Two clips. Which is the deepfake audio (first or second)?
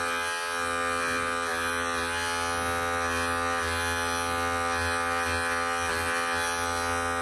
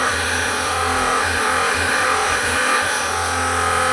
second